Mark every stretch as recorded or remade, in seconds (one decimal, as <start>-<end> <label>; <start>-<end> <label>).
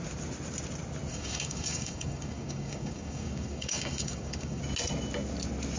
0.0-1.1 recorded; 1.1-4.6 remade; 4.6-5.8 recorded